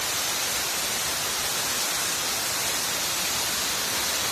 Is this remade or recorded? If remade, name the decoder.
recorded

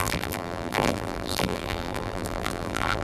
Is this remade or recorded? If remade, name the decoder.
remade, vocoder, BigVGAN v2